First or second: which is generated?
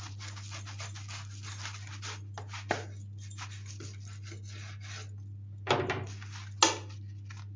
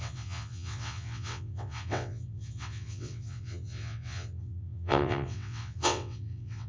second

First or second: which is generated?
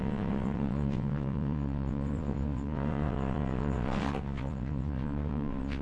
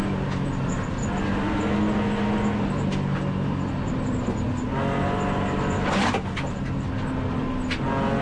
first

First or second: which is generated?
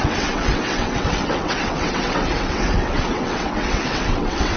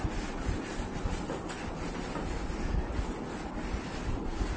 first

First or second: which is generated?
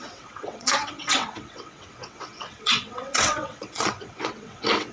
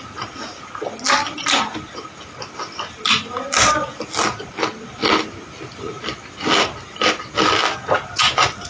first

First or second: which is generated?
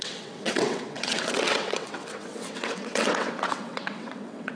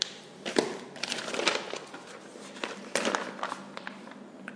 first